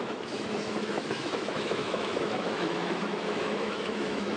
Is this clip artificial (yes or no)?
yes